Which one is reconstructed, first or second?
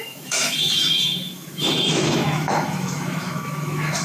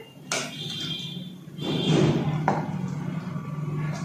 first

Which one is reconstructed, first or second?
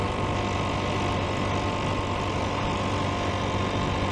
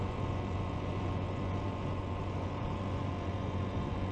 second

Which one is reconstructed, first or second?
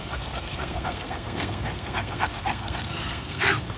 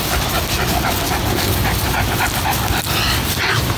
first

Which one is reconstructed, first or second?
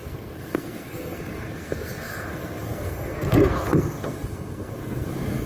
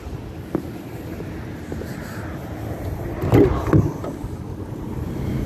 first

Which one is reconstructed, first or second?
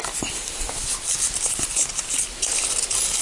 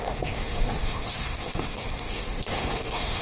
second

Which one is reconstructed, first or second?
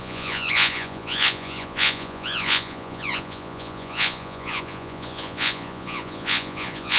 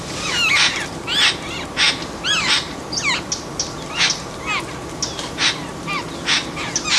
first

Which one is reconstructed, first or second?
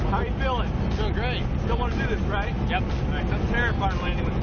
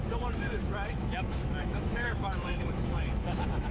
second